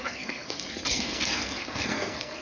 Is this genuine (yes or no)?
no